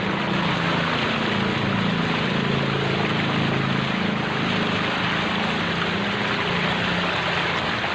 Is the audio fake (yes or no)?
no